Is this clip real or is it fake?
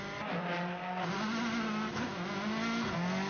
real